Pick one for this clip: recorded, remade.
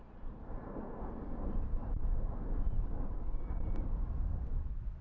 recorded